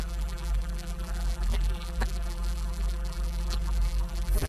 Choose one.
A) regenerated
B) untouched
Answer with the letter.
A